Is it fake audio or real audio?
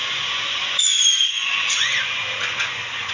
fake